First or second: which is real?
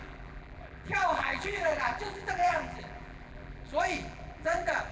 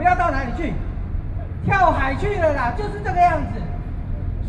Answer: second